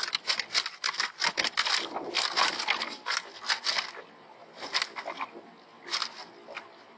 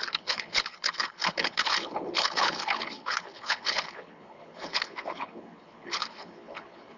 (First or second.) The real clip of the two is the first